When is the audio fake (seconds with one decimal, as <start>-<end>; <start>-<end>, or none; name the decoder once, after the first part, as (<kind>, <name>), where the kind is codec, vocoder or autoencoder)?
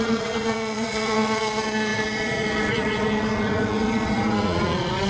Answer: 0.0-5.1 (vocoder, Vocos)